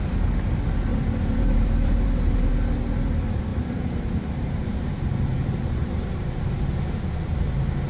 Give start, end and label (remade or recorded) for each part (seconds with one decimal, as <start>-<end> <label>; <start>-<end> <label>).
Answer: 0.0-0.9 recorded; 0.9-2.5 remade; 2.5-3.5 recorded; 3.5-6.5 remade; 6.5-7.9 recorded